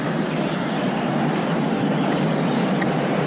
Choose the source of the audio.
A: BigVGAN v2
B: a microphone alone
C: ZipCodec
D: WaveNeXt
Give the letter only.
A